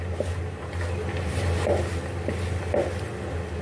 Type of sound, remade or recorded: recorded